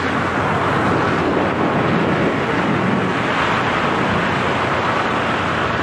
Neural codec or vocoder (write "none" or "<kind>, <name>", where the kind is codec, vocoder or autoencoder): none